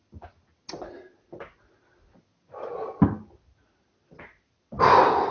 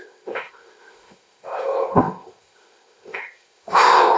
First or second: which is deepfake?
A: second